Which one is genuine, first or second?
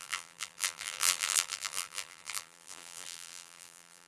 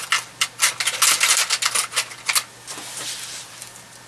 second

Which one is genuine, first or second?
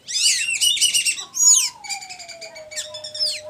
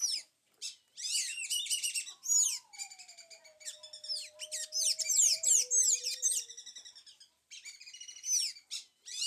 first